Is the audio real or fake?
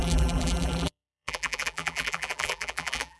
fake